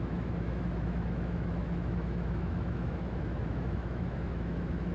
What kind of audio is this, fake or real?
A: fake